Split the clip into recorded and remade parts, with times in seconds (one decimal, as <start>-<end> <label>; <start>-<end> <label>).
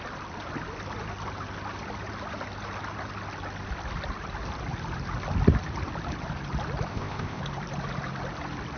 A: 0.0-6.9 recorded; 6.9-7.4 remade; 7.4-8.8 recorded